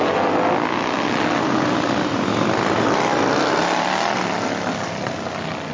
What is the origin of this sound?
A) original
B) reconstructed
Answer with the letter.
A